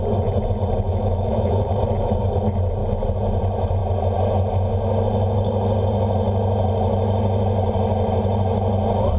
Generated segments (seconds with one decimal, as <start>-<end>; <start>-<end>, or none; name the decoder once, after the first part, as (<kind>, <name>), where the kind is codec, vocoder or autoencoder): 0.9-1.7 (autoencoder, DAC-VAE)